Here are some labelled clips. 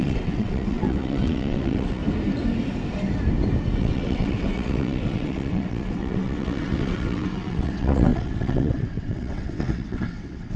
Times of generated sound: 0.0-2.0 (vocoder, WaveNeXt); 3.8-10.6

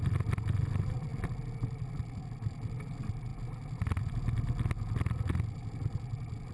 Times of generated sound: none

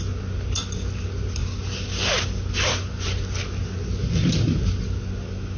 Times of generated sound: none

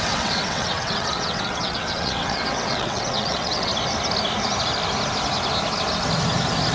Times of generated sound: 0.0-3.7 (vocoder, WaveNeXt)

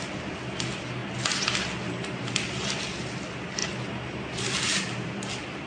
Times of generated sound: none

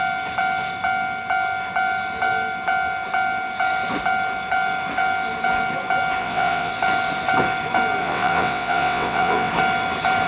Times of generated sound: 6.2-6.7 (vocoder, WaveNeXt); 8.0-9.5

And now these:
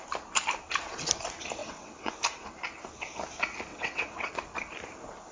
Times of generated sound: 1.6-2.1 (vocoder, WaveNeXt); 3.7-4.3